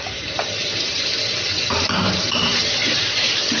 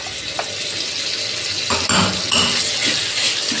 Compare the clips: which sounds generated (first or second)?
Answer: first